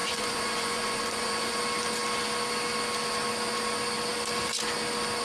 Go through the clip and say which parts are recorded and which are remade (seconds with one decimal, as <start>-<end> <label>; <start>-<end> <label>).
0.0-1.6 remade; 1.6-5.2 recorded

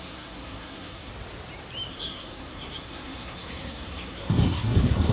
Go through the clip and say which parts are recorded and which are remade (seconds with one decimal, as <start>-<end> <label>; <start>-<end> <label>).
0.0-1.1 remade; 1.1-1.9 recorded; 1.9-5.1 remade

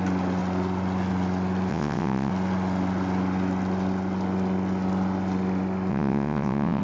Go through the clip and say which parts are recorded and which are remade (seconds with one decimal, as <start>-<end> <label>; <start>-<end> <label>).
0.0-1.7 recorded; 1.7-2.3 remade; 2.3-5.9 recorded; 5.9-6.8 remade

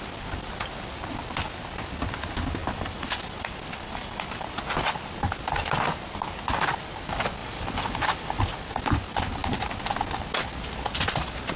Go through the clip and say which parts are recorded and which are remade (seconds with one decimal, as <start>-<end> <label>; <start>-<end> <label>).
0.0-2.6 recorded; 2.6-4.6 remade; 4.6-7.4 recorded; 7.4-8.4 remade; 8.4-11.6 recorded

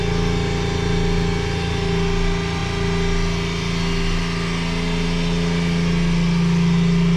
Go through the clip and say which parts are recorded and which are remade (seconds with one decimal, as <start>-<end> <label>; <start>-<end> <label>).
0.0-7.2 recorded